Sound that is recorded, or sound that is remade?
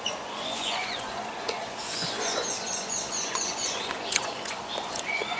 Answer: remade